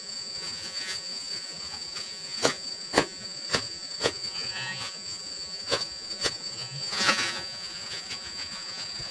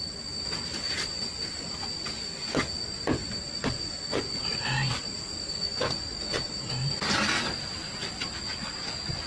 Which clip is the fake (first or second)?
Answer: first